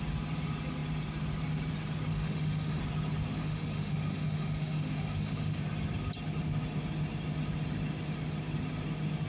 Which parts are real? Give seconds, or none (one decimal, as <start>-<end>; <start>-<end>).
0.0-2.1; 2.8-3.4; 5.6-9.3